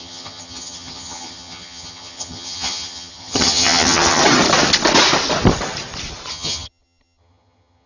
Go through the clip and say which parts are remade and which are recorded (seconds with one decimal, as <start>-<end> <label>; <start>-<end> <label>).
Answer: 0.0-4.2 remade; 4.2-6.3 recorded; 6.3-7.9 remade